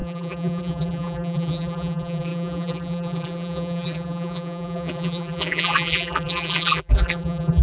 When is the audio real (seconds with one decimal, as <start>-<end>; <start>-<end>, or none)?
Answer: none